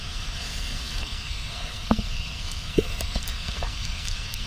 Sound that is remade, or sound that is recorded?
remade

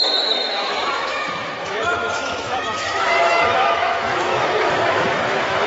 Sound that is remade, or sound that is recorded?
remade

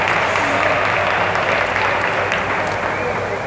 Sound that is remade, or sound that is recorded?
recorded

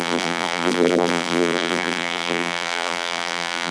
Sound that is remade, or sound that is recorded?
remade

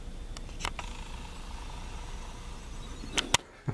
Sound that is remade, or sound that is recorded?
recorded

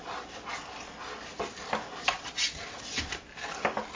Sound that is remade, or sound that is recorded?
recorded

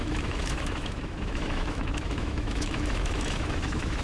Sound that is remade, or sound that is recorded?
remade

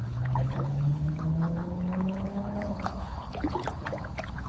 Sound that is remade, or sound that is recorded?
remade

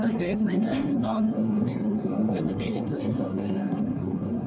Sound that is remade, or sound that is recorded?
remade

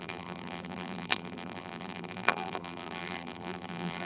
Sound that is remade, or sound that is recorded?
remade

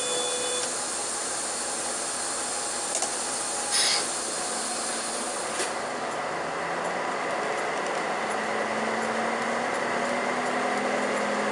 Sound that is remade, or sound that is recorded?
recorded